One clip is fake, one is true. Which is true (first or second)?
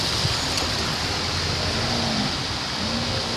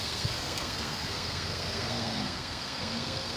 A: first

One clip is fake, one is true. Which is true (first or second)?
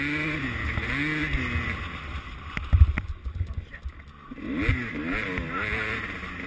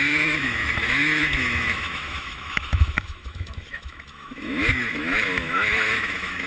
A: first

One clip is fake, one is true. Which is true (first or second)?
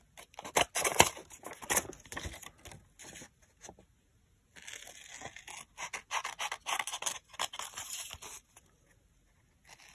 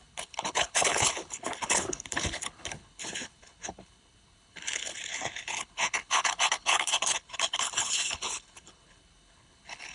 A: first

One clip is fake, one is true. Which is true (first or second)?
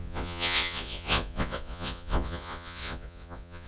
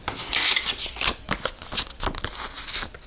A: second